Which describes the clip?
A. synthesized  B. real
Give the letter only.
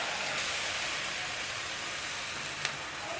B